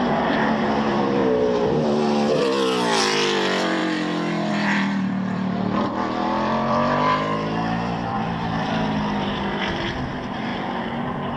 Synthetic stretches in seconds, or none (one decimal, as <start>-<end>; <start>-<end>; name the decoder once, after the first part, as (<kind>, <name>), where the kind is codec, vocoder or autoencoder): 0.0-1.2 (vocoder, BigVGAN v2); 3.0-3.8; 4.5-11.4